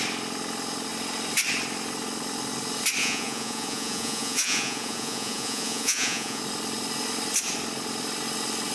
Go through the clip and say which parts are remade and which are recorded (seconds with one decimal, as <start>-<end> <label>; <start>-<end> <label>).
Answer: 0.0-3.0 recorded; 3.0-6.4 remade; 6.4-8.7 recorded